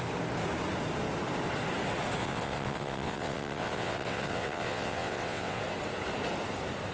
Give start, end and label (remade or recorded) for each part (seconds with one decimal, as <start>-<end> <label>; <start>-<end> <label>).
0.0-2.2 recorded; 2.2-5.6 remade; 5.6-6.9 recorded